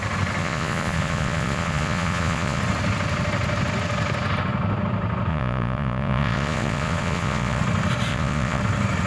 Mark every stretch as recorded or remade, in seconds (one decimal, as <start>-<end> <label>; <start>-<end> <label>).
0.0-0.4 recorded; 0.4-2.6 remade; 2.6-5.3 recorded; 5.3-7.6 remade; 7.6-8.1 recorded; 8.1-8.6 remade; 8.6-9.1 recorded